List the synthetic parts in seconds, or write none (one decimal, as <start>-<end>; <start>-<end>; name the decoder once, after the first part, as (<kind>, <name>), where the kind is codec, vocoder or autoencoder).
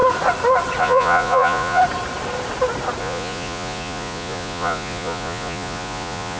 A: 0.8-1.8 (vocoder, Vocos); 3.0-6.4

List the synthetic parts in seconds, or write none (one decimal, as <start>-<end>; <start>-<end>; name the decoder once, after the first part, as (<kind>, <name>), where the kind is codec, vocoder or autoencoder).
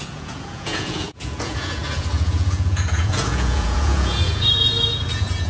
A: 0.0-5.5 (vocoder, Vocos)